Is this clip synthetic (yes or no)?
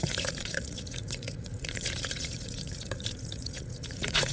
yes